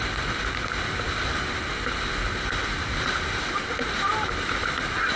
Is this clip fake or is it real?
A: real